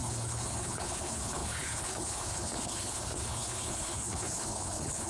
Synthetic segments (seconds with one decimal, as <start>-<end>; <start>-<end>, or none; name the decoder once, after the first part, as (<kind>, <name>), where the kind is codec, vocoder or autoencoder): 0.0-5.1 (codec, HILCodec)